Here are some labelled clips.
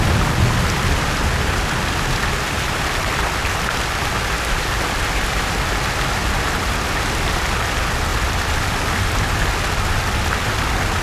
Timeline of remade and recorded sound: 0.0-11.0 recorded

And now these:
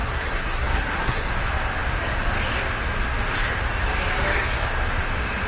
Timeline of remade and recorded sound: 0.0-1.3 remade; 1.3-5.5 recorded

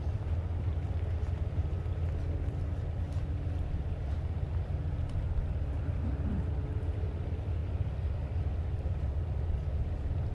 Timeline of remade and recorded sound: 0.0-10.3 recorded

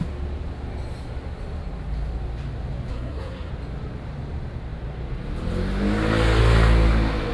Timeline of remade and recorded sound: 0.0-2.9 recorded; 2.9-3.5 remade; 3.5-7.3 recorded

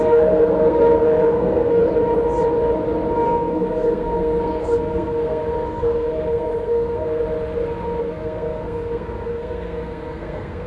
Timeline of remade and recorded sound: 0.0-1.8 remade; 1.8-3.1 recorded; 3.1-7.2 remade; 7.2-8.0 recorded; 8.0-10.7 remade